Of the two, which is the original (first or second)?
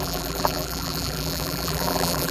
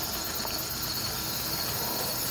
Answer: second